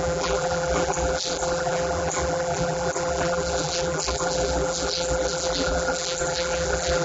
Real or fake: fake